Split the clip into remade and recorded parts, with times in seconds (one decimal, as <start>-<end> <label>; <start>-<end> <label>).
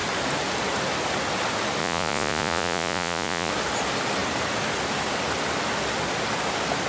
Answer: 0.0-1.8 recorded; 1.8-3.5 remade; 3.5-6.9 recorded